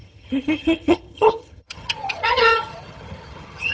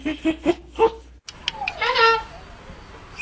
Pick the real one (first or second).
second